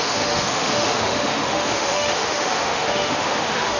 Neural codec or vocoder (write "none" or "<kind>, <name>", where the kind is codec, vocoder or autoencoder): autoencoder, DAC-VAE